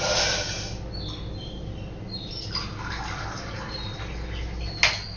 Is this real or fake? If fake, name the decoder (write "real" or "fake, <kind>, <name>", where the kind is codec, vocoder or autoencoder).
real